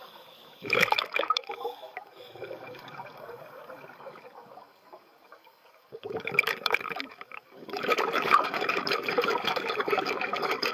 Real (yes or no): no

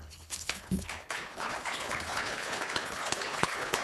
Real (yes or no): no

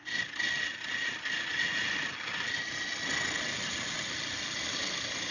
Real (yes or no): yes